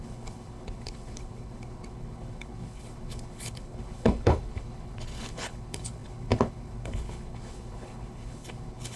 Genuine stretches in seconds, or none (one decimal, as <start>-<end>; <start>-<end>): none

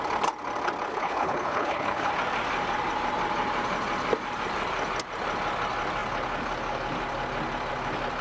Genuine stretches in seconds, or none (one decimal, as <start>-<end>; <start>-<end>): 0.0-0.9; 2.1-8.2

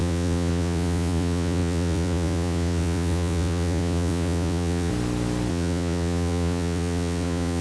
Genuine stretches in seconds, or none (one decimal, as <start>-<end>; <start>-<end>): 4.9-5.5

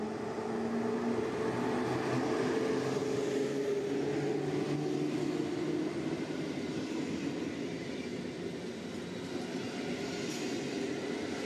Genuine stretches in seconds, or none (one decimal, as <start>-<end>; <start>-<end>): 0.0-3.0; 3.8-11.5

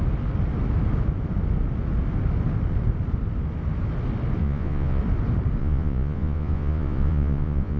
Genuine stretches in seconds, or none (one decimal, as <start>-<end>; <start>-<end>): 0.0-4.4; 5.0-5.6

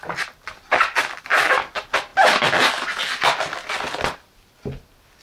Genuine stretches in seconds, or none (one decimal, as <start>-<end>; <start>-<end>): 0.0-5.2